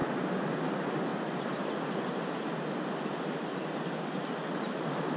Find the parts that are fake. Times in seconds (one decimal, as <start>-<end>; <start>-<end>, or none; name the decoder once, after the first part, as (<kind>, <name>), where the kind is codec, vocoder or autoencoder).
none